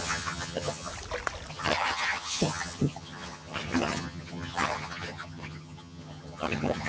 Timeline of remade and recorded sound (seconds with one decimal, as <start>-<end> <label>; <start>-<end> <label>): 0.0-0.9 remade; 0.9-1.5 recorded; 1.5-6.9 remade